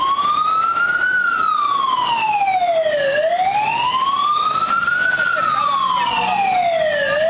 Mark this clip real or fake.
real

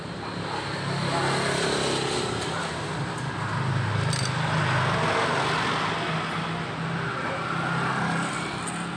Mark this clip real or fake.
real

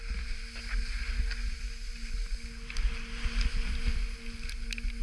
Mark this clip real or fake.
real